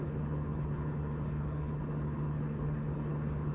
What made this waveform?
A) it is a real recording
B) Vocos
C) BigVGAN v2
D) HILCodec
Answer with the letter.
D